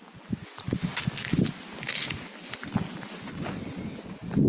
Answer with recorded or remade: recorded